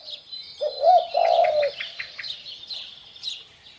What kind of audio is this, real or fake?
real